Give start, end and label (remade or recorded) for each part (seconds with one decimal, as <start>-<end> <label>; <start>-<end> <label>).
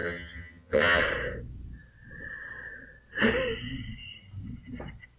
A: 0.0-1.0 remade; 1.0-5.2 recorded